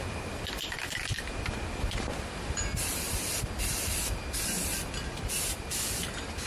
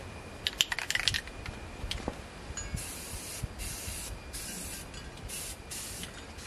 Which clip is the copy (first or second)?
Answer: first